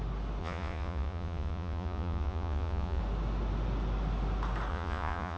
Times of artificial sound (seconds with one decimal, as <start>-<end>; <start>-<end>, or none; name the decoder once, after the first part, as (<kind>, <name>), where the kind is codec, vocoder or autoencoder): 0.4-3.0 (vocoder, Vocos); 4.7-5.4

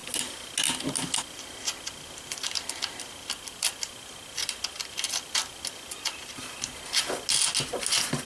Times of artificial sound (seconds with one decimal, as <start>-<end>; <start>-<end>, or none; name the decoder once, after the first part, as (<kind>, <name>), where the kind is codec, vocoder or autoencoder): none